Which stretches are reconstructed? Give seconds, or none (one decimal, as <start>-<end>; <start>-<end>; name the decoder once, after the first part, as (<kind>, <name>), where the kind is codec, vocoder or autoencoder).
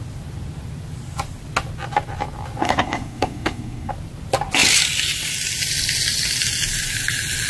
2.6-3.9 (codec, SNAC)